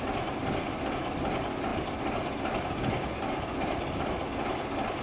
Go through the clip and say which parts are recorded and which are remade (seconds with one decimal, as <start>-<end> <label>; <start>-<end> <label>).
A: 0.0-5.0 recorded